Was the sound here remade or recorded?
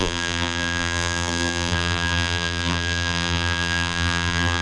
remade